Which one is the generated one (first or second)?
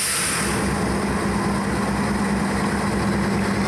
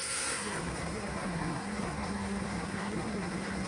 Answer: second